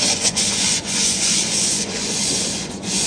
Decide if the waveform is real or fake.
fake